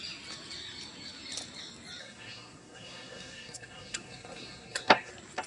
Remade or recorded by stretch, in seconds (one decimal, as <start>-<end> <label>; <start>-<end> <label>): 0.0-2.0 recorded; 2.0-5.1 remade; 5.1-5.5 recorded